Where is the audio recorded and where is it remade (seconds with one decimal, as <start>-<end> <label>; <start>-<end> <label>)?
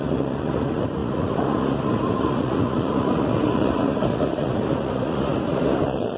0.0-6.2 remade